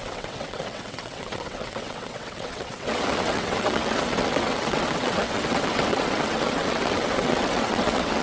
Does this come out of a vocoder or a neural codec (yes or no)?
yes